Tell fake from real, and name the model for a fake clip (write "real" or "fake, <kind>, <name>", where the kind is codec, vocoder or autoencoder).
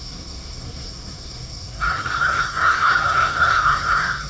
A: fake, codec, SNAC